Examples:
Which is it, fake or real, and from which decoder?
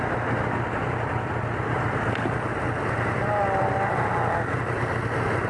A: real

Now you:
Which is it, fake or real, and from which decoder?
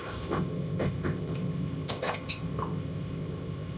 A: fake, codec, ZipCodec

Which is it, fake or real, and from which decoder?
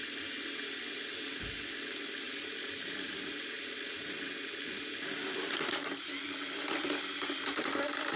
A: real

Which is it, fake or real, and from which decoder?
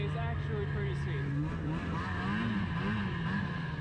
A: real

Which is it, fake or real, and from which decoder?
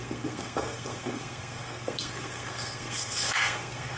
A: fake, codec, SNAC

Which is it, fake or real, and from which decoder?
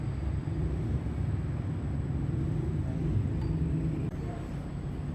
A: real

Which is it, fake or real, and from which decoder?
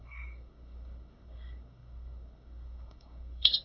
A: fake, codec, SNAC